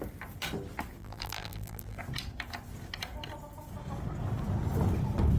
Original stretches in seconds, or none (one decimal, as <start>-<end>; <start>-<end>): 0.0-1.0; 2.0-5.4